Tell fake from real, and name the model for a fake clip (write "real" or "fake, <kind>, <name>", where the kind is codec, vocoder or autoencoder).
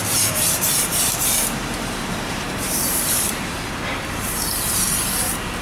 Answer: fake, vocoder, BigVGAN v2